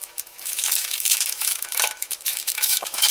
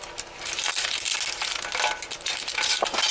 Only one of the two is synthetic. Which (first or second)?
first